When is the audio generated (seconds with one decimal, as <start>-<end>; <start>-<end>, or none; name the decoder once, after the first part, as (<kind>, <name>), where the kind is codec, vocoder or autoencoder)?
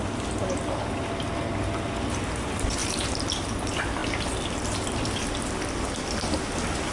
2.8-3.3 (vocoder, BigVGAN v2)